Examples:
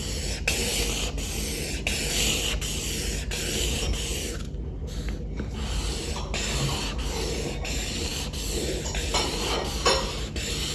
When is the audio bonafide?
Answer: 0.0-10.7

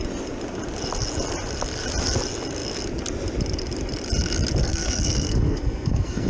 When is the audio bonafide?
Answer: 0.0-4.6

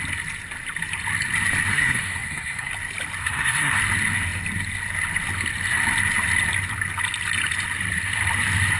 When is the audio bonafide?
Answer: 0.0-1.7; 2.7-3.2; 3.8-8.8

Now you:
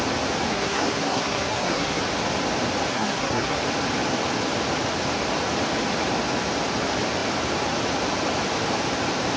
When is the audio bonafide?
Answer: 0.0-0.5; 2.0-2.9; 3.6-9.4

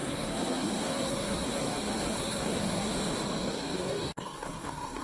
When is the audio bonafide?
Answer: 2.9-3.5

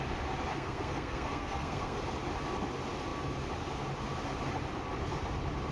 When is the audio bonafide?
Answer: 0.0-0.5; 2.0-5.7

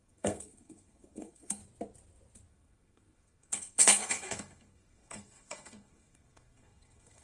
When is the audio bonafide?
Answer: 1.6-2.5

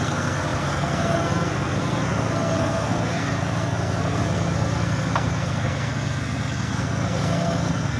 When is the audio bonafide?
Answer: none